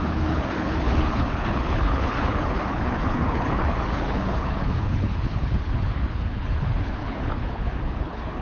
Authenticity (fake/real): fake